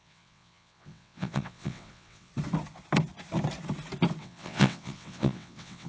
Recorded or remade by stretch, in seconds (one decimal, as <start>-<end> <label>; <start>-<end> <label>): 0.0-2.3 remade; 2.3-4.2 recorded; 4.2-5.9 remade